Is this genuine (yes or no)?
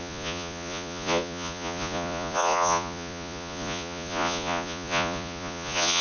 no